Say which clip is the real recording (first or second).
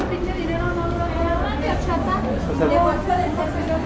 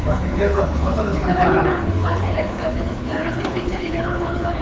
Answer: first